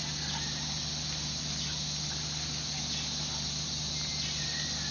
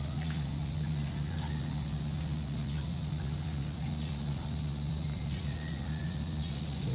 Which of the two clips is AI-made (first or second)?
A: second